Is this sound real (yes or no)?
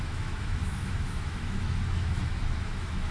no